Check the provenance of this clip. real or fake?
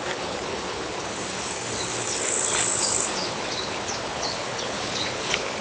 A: fake